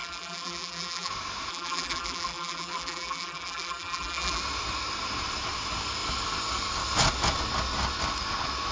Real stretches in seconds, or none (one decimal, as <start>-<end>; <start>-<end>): 1.1-1.5; 4.4-8.7